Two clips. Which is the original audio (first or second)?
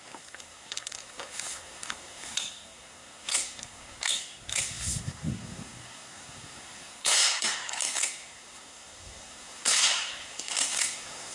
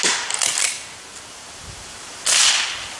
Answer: second